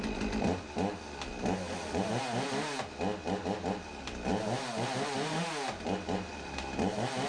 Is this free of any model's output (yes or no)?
yes